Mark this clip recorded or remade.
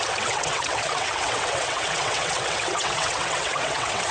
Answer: remade